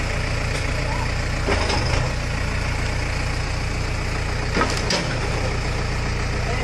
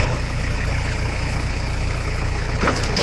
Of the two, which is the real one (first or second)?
first